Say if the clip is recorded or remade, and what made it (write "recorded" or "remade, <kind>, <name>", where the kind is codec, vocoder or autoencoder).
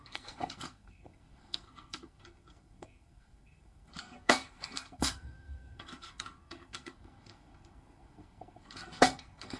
remade, codec, SNAC